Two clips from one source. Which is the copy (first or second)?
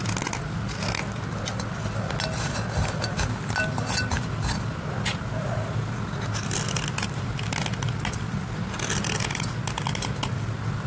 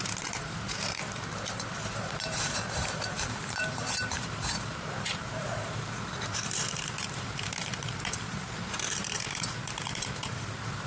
second